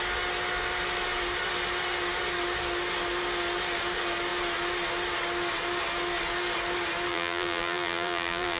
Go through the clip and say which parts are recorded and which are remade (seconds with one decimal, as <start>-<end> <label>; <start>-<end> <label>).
0.0-7.1 recorded; 7.1-8.6 remade